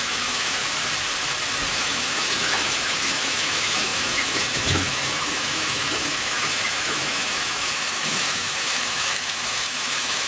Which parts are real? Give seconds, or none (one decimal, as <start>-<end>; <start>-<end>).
0.6-1.7